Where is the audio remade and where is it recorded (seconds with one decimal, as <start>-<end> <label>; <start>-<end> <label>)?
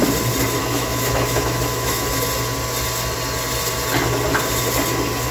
0.0-0.6 recorded; 0.6-2.1 remade; 2.1-5.3 recorded